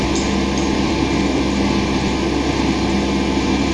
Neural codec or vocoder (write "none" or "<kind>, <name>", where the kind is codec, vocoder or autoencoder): none